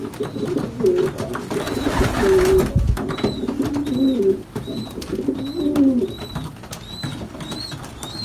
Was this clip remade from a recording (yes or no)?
no